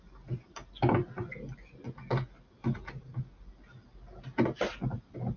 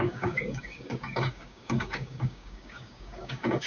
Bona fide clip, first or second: first